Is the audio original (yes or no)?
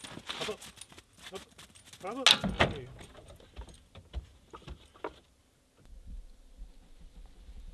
yes